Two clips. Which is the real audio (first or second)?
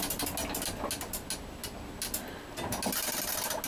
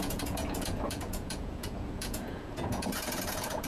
first